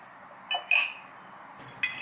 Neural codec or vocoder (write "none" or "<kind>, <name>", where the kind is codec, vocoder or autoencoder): none